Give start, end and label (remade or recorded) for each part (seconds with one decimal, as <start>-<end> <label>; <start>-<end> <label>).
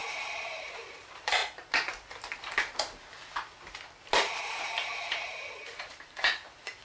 0.0-1.4 remade; 1.4-4.4 recorded; 4.4-6.8 remade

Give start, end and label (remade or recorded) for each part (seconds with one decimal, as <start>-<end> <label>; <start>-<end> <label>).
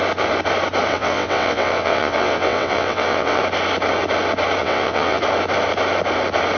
0.0-0.9 recorded; 0.9-3.4 remade; 3.4-4.6 recorded; 4.6-5.2 remade; 5.2-6.6 recorded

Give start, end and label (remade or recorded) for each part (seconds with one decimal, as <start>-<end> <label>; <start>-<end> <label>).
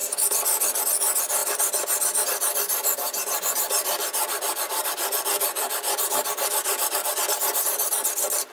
0.0-3.0 recorded; 3.0-7.2 remade; 7.2-8.5 recorded